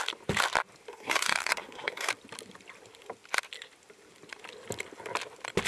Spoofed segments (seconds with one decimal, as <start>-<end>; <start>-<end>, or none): 0.9-2.1